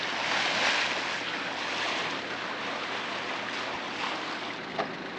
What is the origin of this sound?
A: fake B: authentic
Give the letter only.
B